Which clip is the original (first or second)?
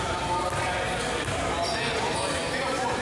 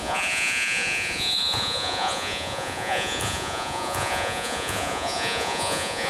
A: first